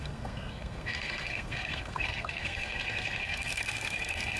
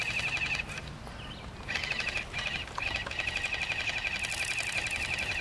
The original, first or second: second